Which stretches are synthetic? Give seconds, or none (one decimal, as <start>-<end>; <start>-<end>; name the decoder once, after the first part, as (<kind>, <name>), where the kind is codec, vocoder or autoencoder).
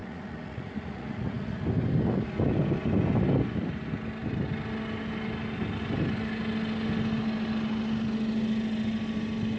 0.0-1.6 (vocoder, Vocos)